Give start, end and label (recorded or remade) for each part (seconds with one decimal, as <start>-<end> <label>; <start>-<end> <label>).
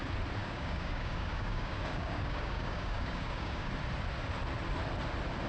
0.0-0.4 recorded; 0.4-3.7 remade; 3.7-5.5 recorded